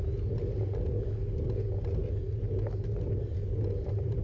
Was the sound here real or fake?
real